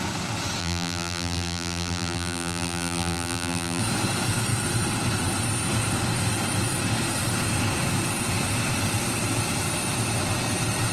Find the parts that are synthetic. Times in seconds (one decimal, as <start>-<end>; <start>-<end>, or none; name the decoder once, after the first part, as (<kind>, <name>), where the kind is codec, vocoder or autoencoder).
0.6-3.8 (vocoder, BigVGAN v2)

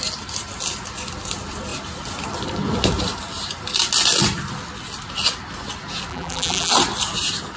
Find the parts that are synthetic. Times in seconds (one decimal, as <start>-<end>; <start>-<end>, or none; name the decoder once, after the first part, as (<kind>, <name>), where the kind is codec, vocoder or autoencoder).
6.1-6.7 (vocoder, BigVGAN v2)

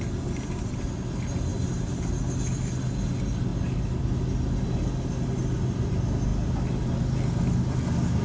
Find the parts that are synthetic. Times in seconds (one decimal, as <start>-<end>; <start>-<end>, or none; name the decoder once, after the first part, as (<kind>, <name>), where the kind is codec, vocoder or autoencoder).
1.5-2.1 (vocoder, BigVGAN v2)

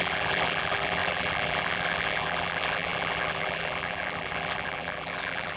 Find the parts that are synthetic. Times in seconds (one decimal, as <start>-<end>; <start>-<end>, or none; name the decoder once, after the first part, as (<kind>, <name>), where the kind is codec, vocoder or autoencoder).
0.0-5.6 (vocoder, BigVGAN v2)

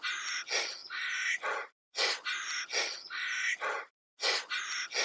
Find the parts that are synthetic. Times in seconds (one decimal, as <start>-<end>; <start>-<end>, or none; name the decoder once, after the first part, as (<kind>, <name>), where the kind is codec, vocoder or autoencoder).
none

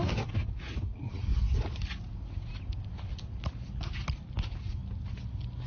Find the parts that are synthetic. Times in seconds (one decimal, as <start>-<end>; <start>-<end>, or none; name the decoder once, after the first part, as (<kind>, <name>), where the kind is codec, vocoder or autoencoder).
none

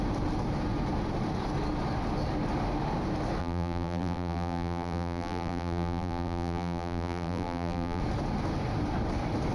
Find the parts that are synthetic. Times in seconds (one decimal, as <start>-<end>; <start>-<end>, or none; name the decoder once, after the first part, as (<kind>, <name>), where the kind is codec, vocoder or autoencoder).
3.4-8.0 (vocoder, BigVGAN v2)

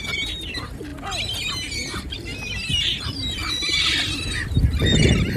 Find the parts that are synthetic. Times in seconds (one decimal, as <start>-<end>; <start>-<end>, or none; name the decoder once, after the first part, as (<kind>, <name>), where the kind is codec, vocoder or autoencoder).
0.0-0.9 (vocoder, BigVGAN v2); 1.5-2.3; 2.8-5.4